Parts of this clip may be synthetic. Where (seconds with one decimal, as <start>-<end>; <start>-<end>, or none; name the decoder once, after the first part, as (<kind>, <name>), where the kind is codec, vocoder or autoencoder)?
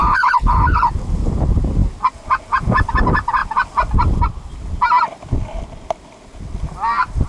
0.0-0.9 (codec, HILCodec)